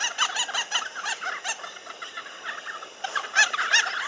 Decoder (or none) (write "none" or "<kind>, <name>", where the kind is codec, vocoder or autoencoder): none